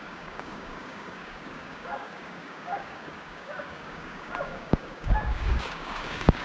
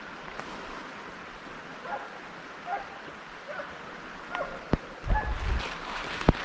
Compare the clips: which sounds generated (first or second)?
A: first